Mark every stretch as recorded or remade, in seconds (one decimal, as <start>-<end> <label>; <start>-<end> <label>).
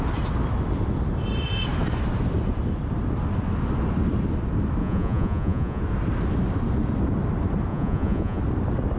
0.0-4.8 recorded; 4.8-5.8 remade; 5.8-7.7 recorded; 7.7-8.4 remade; 8.4-9.0 recorded